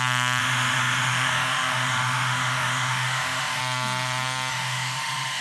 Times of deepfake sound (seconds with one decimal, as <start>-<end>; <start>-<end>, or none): 0.4-3.6; 4.5-5.4